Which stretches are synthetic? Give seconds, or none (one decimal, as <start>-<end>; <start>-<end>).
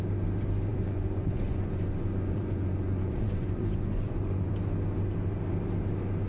0.7-4.5